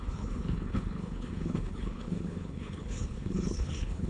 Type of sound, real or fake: fake